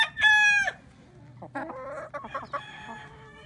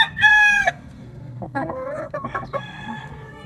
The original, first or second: first